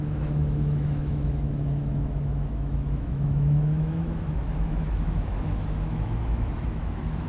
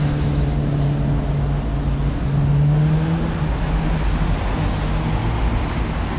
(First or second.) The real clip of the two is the second